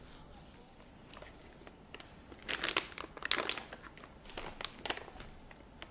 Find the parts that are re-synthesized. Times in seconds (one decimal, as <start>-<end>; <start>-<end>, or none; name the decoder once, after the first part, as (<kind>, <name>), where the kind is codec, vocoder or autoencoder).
none

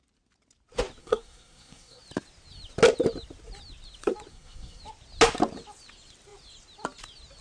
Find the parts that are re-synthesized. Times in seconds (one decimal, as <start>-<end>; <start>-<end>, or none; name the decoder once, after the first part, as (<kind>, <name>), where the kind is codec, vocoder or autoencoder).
1.0-2.0 (codec, SNAC); 4.3-4.8

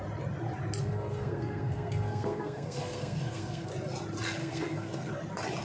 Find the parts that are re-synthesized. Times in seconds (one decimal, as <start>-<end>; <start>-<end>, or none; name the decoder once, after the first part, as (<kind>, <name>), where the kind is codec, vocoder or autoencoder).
0.8-3.7 (codec, SNAC); 4.4-5.1

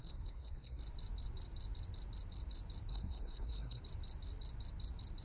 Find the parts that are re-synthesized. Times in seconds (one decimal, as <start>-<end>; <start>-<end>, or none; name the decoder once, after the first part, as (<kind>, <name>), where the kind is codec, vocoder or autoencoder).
0.0-0.8 (codec, SNAC); 2.9-3.8